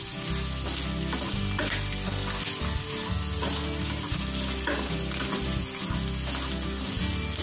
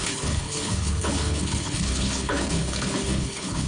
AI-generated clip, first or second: second